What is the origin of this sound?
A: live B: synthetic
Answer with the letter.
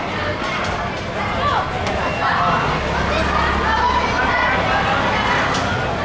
A